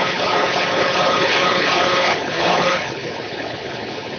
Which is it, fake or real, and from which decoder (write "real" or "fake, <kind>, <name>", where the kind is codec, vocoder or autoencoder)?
fake, codec, HILCodec